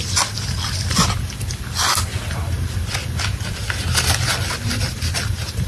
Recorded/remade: recorded